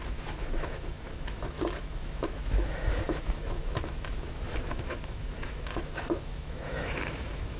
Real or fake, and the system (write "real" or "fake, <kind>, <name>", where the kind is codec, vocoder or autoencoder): fake, autoencoder, DAC-VAE